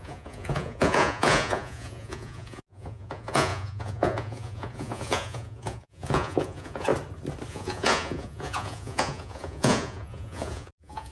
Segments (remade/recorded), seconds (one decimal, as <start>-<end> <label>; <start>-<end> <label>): 0.0-6.9 remade; 6.9-7.5 recorded; 7.5-11.1 remade